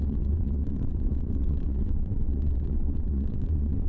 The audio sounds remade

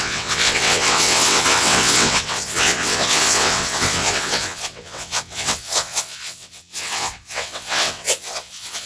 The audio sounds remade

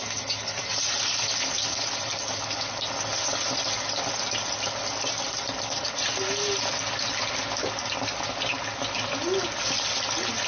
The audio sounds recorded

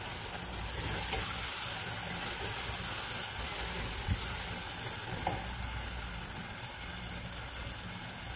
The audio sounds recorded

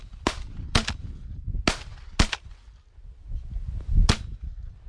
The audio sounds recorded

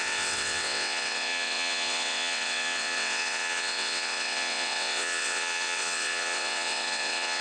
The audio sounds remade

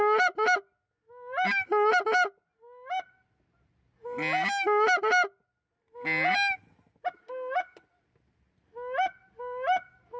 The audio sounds recorded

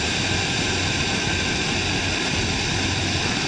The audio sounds recorded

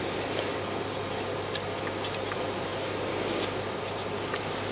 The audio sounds recorded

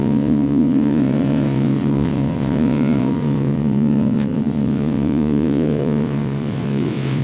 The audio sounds remade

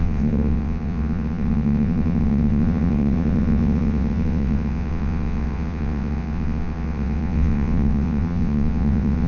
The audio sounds remade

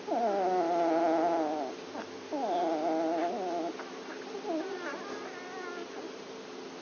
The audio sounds recorded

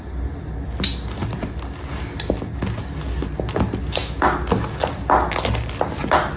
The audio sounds recorded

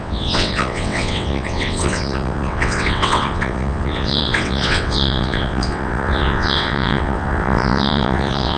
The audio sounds remade